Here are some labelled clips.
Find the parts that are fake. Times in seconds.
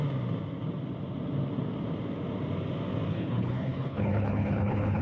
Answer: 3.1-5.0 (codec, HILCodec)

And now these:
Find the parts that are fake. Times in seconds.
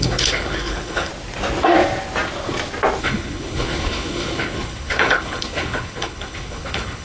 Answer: 0.0-1.1 (codec, HILCodec); 3.0-7.0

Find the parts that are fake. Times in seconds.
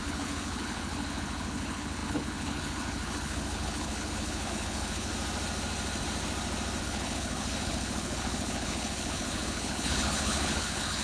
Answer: 0.0-5.1 (codec, HILCodec); 6.8-11.0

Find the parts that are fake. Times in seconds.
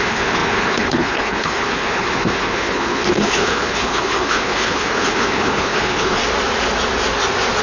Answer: 0.0-6.2 (codec, HILCodec)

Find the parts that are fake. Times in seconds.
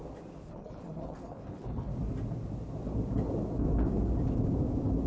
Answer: 0.5-1.9 (codec, HILCodec)